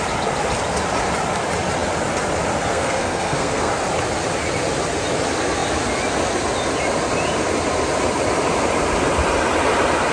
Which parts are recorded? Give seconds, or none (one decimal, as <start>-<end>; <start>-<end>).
0.0-2.7; 3.7-10.1